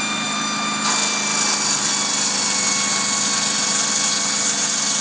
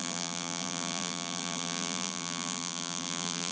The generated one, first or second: second